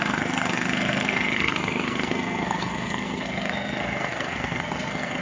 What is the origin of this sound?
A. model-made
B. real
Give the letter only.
A